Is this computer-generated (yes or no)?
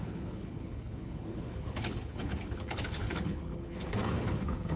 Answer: yes